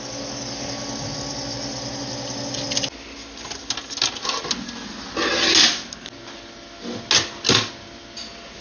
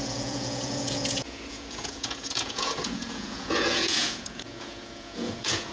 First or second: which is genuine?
first